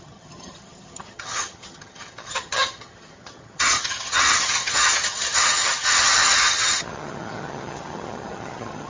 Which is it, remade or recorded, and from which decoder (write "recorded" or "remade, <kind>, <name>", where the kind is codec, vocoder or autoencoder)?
remade, vocoder, HiFi-GAN